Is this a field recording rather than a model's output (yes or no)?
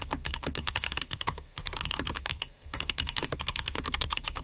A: no